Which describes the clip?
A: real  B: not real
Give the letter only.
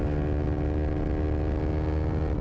A